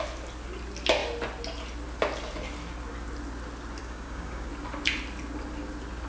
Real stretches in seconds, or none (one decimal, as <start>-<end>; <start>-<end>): 0.0-3.8; 4.5-6.1